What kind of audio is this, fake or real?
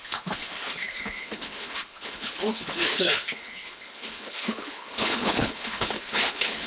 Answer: fake